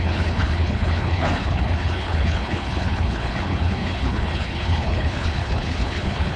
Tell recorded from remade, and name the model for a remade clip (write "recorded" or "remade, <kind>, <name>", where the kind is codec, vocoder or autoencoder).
remade, codec, HILCodec